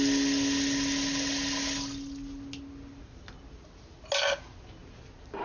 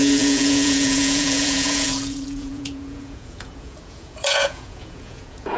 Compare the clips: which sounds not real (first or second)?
second